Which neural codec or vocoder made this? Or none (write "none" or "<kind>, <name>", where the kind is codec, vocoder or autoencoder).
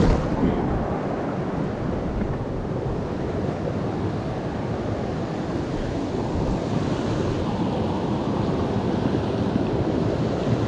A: none